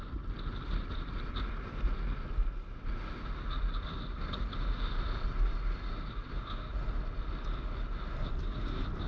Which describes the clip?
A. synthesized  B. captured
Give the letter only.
B